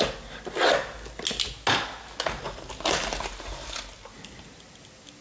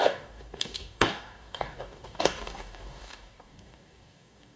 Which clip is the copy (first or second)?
second